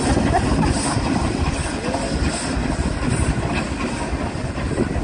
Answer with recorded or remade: recorded